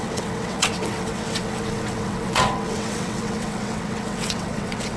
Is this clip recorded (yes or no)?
no